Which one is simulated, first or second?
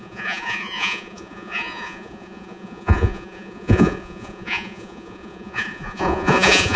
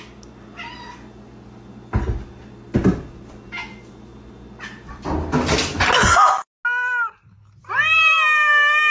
first